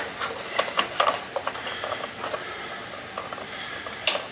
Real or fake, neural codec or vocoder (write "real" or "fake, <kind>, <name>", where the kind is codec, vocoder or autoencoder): fake, vocoder, BigVGAN v2